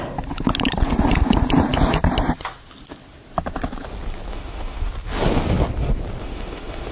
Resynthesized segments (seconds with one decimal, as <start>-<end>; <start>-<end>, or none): 4.3-4.9; 6.2-6.9